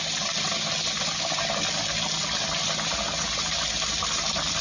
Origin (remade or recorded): recorded